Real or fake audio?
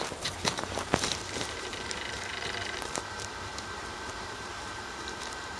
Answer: fake